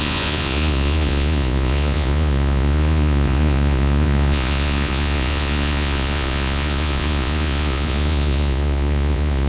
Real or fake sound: fake